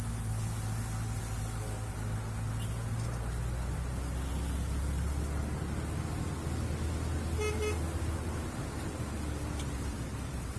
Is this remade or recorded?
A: recorded